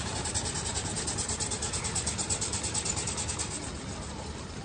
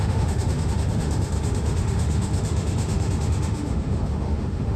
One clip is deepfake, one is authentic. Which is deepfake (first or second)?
second